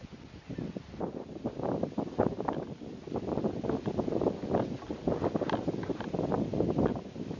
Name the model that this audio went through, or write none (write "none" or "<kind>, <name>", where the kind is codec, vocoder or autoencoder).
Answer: none